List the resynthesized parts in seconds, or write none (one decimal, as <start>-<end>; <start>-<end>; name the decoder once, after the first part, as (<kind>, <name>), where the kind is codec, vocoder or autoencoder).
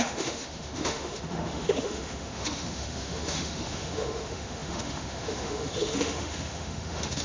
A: 0.0-7.2 (autoencoder, DAC-VAE)